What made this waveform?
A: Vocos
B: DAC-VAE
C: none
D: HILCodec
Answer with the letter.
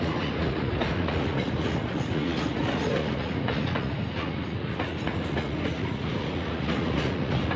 A